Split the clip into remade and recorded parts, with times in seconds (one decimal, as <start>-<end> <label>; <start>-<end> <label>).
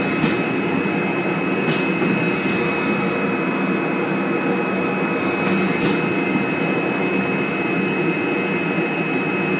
0.0-7.0 recorded; 7.0-7.5 remade; 7.5-9.6 recorded